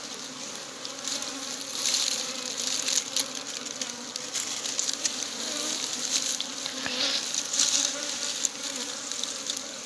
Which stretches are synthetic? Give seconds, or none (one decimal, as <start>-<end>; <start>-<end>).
1.7-2.4; 4.8-6.5